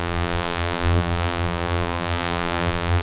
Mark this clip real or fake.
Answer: fake